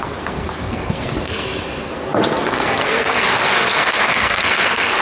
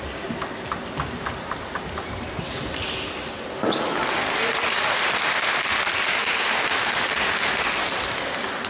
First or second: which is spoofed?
first